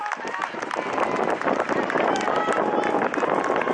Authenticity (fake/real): real